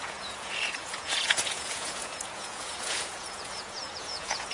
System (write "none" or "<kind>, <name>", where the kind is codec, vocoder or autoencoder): vocoder, Vocos